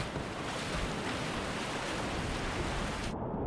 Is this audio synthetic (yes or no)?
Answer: no